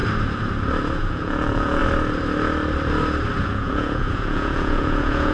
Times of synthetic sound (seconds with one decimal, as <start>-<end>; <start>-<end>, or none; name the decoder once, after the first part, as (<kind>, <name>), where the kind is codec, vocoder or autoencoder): 1.0-1.8 (vocoder, Vocos); 3.4-5.3